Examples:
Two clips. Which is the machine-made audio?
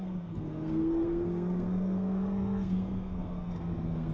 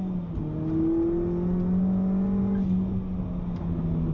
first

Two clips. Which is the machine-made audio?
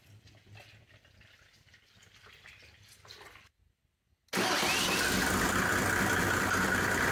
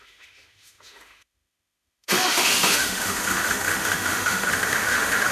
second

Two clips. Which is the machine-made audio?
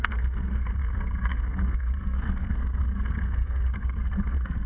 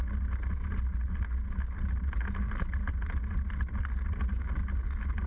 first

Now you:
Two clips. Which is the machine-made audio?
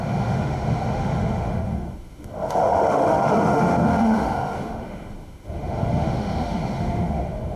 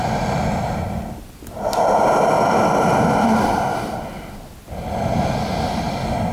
first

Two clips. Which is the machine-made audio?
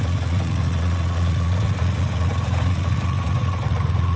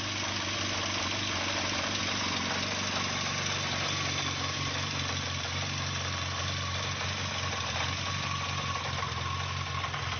first